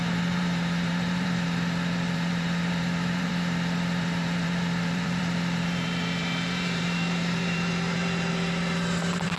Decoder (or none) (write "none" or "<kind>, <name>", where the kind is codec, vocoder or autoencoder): vocoder, BigVGAN v2